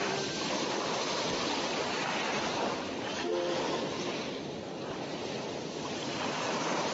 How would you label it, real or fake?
fake